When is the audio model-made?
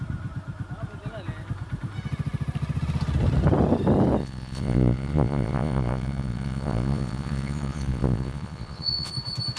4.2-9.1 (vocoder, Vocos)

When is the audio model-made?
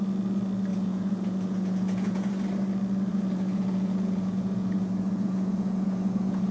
0.7-2.3 (vocoder, Vocos); 3.1-6.5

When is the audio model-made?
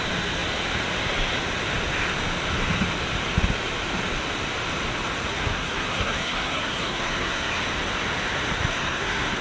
5.3-7.6 (codec, SNAC); 8.7-9.4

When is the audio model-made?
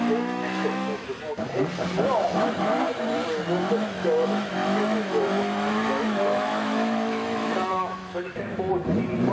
0.0-1.1 (autoencoder, DAC-VAE); 3.7-8.7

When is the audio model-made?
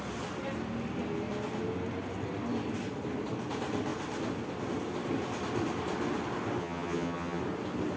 6.6-7.4 (vocoder, HiFi-GAN)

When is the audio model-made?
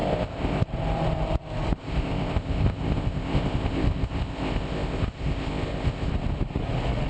0.0-0.6 (codec, ZipCodec); 1.8-6.1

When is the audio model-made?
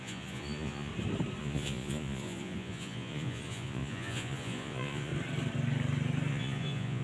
0.0-0.9 (vocoder, Vocos); 1.4-5.1; 6.3-7.0